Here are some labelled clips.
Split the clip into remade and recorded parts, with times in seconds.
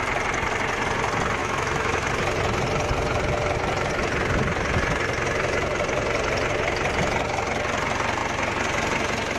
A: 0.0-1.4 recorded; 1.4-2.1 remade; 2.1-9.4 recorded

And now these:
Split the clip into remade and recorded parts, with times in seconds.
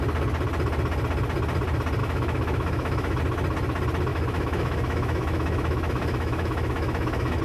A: 0.0-2.0 recorded; 2.0-3.2 remade; 3.2-4.1 recorded; 4.1-7.4 remade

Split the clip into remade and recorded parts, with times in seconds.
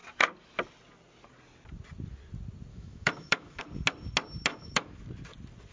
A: 0.0-2.7 recorded; 2.7-3.6 remade; 3.6-4.5 recorded; 4.5-5.0 remade; 5.0-5.7 recorded